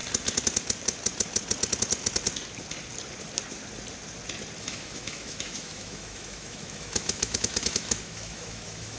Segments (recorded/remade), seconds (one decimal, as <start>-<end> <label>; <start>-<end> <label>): 0.0-4.6 recorded; 4.6-9.0 remade